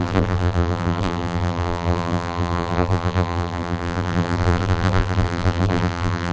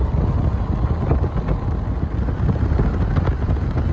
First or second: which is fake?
first